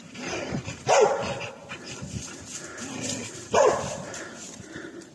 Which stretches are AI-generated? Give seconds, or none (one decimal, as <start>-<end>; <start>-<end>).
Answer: 0.0-1.6; 3.8-5.1